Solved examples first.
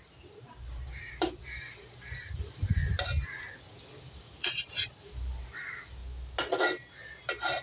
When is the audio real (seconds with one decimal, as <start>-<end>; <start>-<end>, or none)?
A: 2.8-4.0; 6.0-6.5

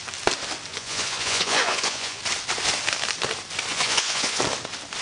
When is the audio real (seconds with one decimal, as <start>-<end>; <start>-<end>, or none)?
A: 0.0-0.7; 2.2-3.7; 4.4-5.0

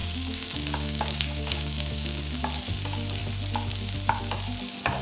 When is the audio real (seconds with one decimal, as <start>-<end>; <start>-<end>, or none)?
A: 2.4-5.0

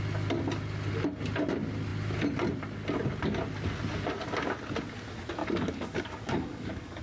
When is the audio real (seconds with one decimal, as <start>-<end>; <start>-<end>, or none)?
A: 0.0-5.4

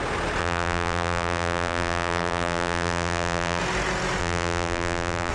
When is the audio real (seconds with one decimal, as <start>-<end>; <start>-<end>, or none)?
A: 0.0-0.4; 3.6-4.2